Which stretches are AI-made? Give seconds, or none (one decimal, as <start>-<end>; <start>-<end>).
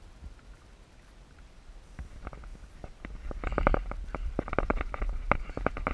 2.5-5.9